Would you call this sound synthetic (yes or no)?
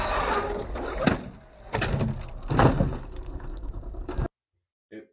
no